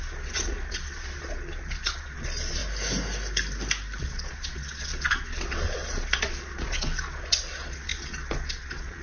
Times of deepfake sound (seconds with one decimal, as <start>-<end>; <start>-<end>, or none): 0.0-2.6; 4.0-9.0